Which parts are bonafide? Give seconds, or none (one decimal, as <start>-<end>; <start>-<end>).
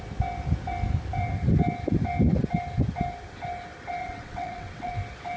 0.0-4.0; 4.9-5.4